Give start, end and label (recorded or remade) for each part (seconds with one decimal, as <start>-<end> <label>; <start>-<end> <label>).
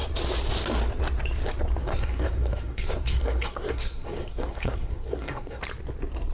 0.0-1.8 recorded; 1.8-5.6 remade; 5.6-6.3 recorded